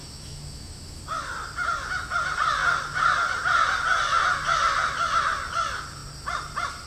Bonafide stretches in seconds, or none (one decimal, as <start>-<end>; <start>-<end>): 1.0-6.9